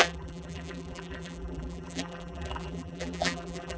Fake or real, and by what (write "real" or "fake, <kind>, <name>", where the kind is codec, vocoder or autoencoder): fake, vocoder, BigVGAN v2